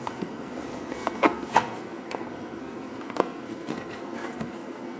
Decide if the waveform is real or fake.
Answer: fake